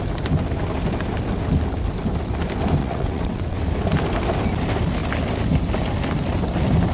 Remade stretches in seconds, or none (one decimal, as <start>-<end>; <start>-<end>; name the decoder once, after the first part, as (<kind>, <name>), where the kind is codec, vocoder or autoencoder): 2.8-3.6 (vocoder, WaveNeXt)